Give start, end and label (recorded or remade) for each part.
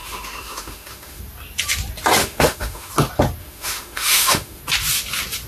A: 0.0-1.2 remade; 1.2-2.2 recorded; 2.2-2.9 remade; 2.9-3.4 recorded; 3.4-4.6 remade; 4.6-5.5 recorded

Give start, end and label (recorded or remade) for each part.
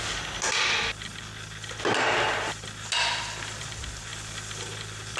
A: 0.0-5.2 recorded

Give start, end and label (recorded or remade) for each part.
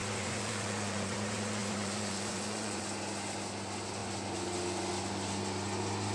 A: 0.0-2.8 remade; 2.8-6.1 recorded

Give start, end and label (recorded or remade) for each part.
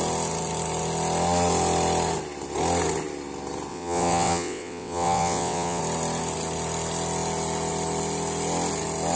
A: 0.0-3.7 recorded; 3.7-5.8 remade; 5.8-9.2 recorded